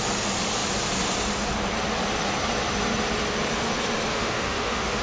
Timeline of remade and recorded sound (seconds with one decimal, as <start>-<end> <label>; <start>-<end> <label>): 0.0-4.1 recorded; 4.1-5.0 remade

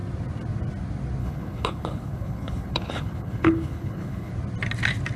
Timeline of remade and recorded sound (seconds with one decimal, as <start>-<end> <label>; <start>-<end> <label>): 0.0-1.2 recorded; 1.2-4.3 remade; 4.3-5.2 recorded

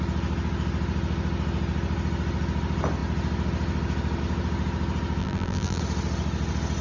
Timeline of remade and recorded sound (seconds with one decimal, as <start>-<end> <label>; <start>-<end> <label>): 0.0-5.2 recorded; 5.2-5.8 remade; 5.8-6.8 recorded

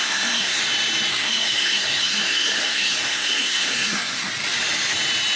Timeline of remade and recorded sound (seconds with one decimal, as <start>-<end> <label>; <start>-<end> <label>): 0.0-0.6 remade; 0.6-1.1 recorded; 1.1-4.3 remade; 4.3-5.4 recorded

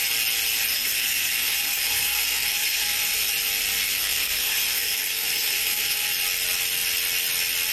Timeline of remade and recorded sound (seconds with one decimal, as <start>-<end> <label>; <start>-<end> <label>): 0.0-0.7 recorded; 0.7-3.3 remade; 3.3-3.8 recorded; 3.8-6.1 remade; 6.1-7.7 recorded

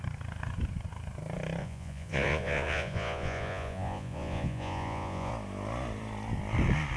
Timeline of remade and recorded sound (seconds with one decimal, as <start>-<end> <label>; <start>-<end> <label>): 0.0-1.6 recorded; 1.6-5.3 remade; 5.3-7.0 recorded

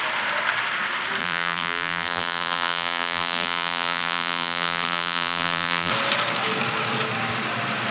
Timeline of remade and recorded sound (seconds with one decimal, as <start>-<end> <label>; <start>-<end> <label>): 0.0-1.2 recorded; 1.2-5.9 remade; 5.9-7.9 recorded